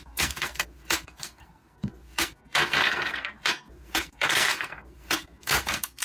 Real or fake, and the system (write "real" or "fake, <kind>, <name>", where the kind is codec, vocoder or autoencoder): fake, codec, SNAC